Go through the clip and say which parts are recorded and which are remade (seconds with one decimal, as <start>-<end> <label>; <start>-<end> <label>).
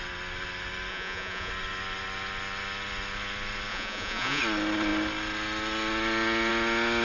0.0-0.9 recorded; 0.9-1.5 remade; 1.5-3.7 recorded; 3.7-4.4 remade; 4.4-7.0 recorded